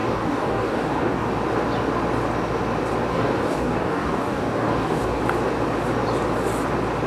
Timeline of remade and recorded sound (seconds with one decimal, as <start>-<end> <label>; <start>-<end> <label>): 0.0-1.3 remade; 1.3-3.1 recorded; 3.1-5.2 remade; 5.2-7.1 recorded